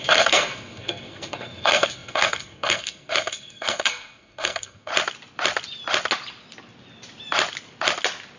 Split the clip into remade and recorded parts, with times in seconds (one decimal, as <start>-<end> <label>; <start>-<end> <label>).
0.0-4.9 remade; 4.9-8.4 recorded